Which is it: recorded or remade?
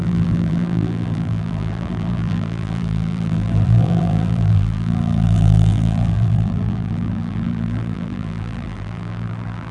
remade